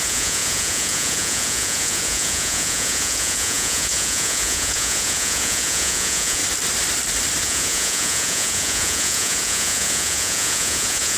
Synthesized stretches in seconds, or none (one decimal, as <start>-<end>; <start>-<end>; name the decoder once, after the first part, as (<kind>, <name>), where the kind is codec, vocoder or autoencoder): 0.0-6.4 (vocoder, Vocos); 7.4-11.2